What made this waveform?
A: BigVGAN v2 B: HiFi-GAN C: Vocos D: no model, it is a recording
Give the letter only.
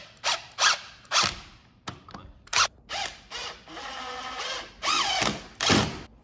D